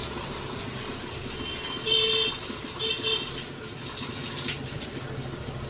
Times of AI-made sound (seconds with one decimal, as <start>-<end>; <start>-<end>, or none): none